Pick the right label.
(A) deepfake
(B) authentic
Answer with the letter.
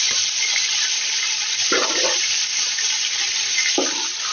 B